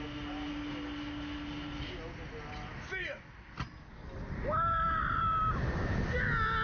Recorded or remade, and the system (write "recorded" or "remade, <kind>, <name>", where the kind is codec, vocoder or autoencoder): recorded